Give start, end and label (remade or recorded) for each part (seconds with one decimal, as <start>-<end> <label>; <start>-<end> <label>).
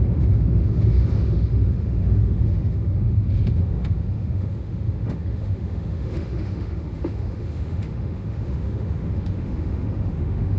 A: 0.0-10.6 remade